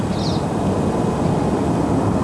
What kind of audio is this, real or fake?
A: real